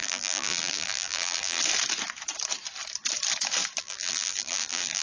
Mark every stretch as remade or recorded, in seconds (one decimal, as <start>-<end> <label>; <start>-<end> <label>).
0.0-1.6 remade; 1.6-3.8 recorded; 3.8-5.0 remade